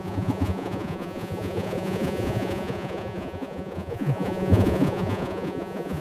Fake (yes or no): yes